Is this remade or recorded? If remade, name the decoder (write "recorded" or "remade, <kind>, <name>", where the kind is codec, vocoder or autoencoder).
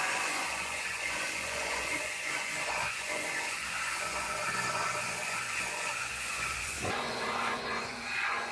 remade, vocoder, Vocos